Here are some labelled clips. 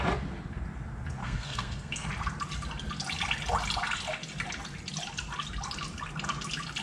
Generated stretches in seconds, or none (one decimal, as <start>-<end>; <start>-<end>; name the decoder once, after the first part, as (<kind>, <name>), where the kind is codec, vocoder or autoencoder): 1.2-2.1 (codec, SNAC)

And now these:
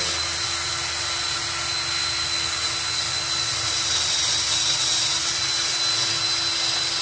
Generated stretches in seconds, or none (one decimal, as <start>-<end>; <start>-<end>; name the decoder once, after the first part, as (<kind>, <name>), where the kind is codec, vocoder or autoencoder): none

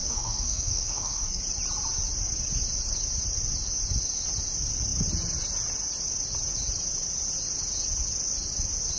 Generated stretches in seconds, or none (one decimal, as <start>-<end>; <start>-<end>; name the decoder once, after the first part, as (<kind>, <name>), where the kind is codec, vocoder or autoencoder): 0.0-1.4 (codec, SNAC)

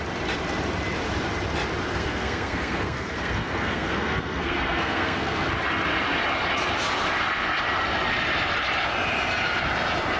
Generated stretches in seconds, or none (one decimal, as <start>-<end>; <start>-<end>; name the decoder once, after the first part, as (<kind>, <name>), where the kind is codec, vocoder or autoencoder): 1.9-5.5 (codec, SNAC)